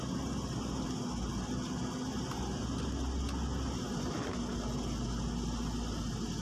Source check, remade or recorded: recorded